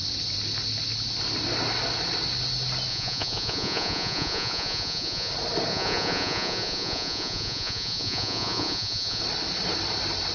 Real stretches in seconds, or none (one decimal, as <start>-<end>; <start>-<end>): 0.0-2.9; 5.3-5.7; 9.2-10.3